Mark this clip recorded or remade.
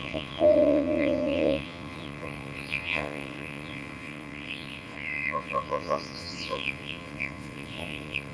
remade